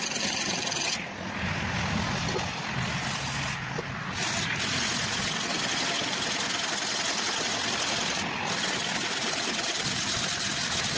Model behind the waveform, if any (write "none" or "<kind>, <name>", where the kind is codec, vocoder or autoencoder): none